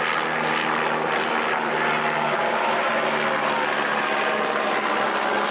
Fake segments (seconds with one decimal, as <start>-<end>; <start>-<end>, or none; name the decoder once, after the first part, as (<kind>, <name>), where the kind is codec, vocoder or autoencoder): 2.4-2.9 (codec, DAC)